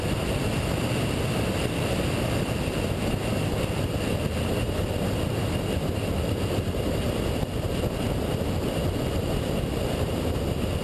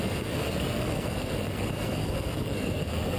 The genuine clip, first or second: first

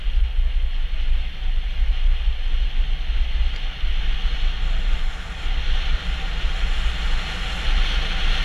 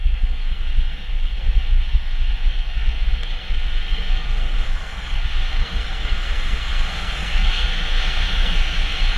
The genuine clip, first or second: first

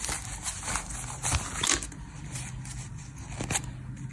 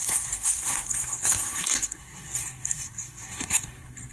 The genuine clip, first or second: first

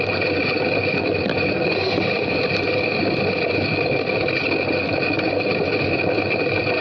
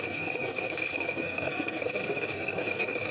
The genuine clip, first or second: first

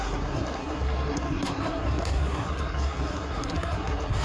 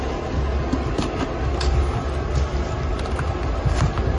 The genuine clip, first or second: second